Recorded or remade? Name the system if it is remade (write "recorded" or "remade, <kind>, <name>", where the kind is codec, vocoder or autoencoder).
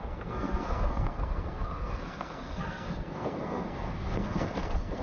remade, codec, SNAC